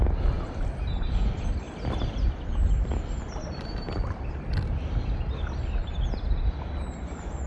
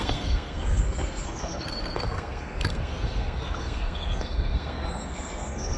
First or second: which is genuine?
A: first